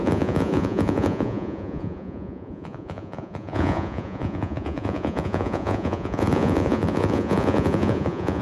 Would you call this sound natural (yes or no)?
no